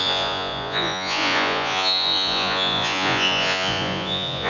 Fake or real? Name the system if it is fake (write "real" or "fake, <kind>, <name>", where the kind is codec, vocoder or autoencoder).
fake, vocoder, Vocos